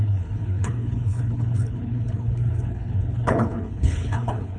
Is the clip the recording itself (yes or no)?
no